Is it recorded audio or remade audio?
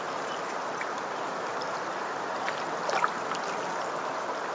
recorded